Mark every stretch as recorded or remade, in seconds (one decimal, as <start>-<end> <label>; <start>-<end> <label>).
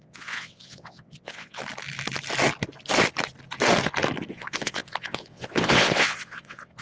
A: 0.0-1.6 remade; 1.6-4.3 recorded; 4.3-6.8 remade